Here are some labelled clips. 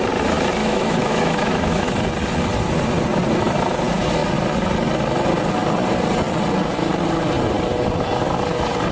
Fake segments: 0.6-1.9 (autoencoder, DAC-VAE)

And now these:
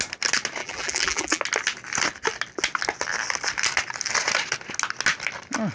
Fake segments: 0.6-1.4 (vocoder, BigVGAN v2)

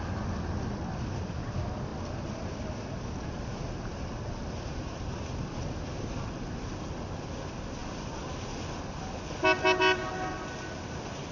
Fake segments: none